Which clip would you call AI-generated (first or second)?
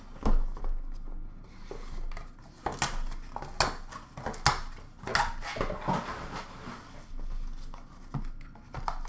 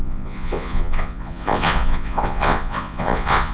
second